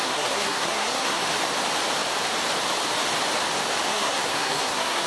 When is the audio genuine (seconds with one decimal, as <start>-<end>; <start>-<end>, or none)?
1.2-3.9